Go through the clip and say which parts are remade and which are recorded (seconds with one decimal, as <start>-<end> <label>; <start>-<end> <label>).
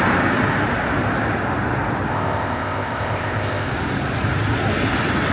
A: 0.0-2.1 recorded; 2.1-3.7 remade; 3.7-5.3 recorded